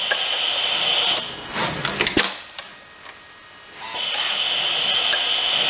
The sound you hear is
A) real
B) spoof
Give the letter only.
A